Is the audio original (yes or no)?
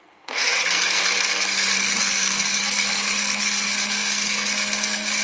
no